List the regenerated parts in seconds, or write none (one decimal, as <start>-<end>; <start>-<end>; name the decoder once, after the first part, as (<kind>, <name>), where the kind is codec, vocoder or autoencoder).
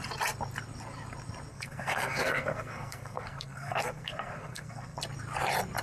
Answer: 1.5-5.0 (codec, SNAC)